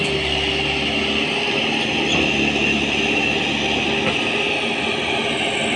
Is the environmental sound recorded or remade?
recorded